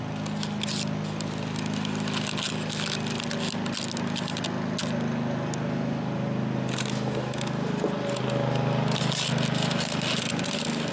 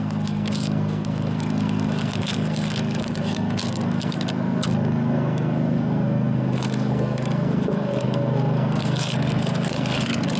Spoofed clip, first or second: second